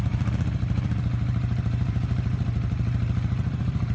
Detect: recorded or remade remade